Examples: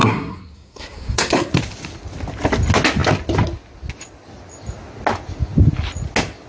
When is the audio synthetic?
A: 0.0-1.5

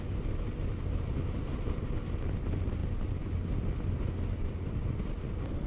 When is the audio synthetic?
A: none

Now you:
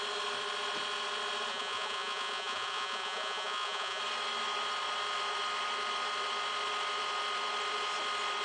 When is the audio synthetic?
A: 1.5-4.0

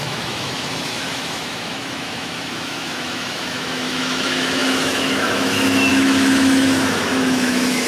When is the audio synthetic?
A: 0.0-7.9

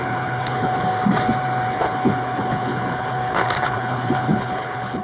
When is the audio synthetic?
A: 0.0-0.9; 1.7-5.0

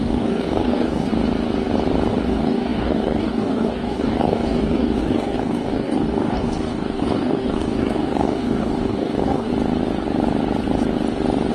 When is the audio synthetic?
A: 0.0-1.1; 2.1-9.5